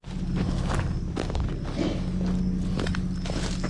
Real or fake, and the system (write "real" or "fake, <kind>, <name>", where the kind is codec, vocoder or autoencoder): real